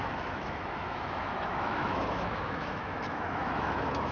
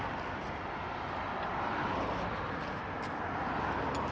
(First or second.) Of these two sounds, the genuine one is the second